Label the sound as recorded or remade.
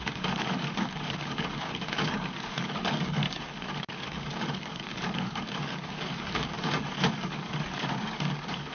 remade